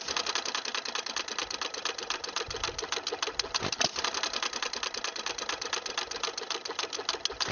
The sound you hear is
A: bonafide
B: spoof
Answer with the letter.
A